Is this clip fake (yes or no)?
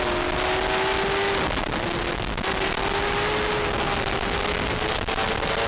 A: no